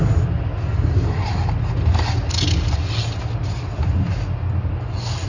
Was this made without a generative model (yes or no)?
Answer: yes